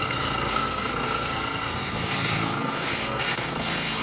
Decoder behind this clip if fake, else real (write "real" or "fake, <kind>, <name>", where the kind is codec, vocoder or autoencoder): fake, codec, SNAC